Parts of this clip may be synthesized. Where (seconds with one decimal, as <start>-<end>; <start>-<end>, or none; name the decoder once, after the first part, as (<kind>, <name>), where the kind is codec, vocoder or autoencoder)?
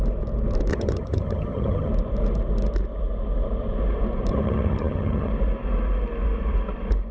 0.7-1.9 (vocoder, HiFi-GAN); 4.3-5.3